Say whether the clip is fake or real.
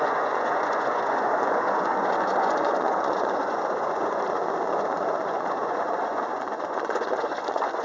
fake